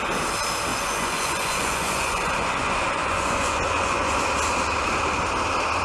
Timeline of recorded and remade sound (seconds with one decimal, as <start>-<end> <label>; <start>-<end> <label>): 0.0-0.7 recorded; 0.7-4.2 remade; 4.2-5.8 recorded